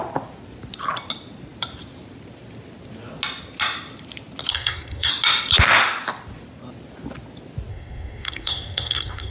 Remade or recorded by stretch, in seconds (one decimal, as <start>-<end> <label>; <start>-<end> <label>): 0.0-4.5 recorded; 4.5-5.1 remade; 5.1-7.7 recorded; 7.7-9.3 remade